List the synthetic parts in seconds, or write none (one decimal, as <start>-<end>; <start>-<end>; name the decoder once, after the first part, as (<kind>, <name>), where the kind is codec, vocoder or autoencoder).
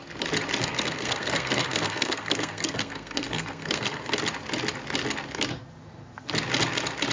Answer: 0.6-4.2 (codec, SNAC)